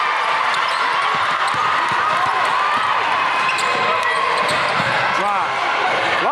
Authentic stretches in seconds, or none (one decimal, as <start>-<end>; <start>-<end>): 0.0-6.3